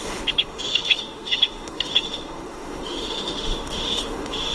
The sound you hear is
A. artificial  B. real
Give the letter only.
A